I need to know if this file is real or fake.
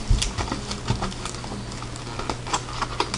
real